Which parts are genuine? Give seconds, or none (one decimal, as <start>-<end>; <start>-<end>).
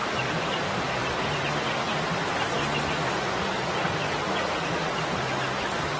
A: 3.6-6.0